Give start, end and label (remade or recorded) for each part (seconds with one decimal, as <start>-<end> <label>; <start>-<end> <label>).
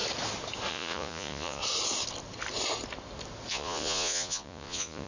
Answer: 0.0-0.7 recorded; 0.7-1.6 remade; 1.6-3.5 recorded; 3.5-5.1 remade